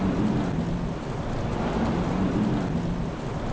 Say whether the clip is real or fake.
real